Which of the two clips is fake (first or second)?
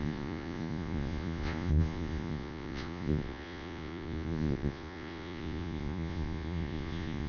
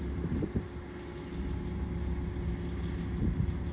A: first